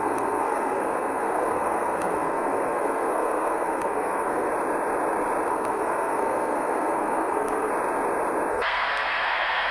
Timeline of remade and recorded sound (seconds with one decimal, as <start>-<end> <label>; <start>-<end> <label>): 0.0-4.5 remade; 4.5-5.5 recorded; 5.5-7.7 remade; 7.7-8.5 recorded; 8.5-9.7 remade